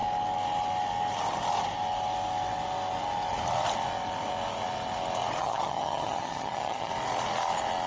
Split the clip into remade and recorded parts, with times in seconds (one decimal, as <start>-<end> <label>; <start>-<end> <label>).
0.0-5.4 recorded; 5.4-6.9 remade; 6.9-7.9 recorded